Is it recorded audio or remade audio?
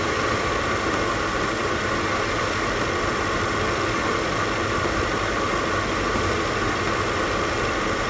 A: recorded